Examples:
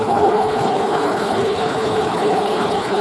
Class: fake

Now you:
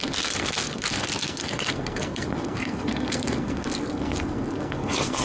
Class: fake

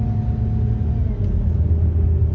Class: real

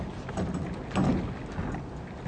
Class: real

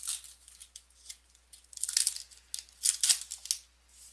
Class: real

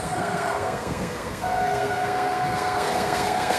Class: fake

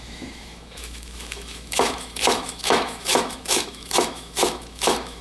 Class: fake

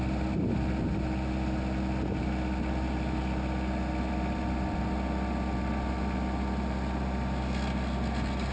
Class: real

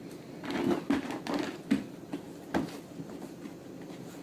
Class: fake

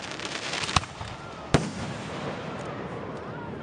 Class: fake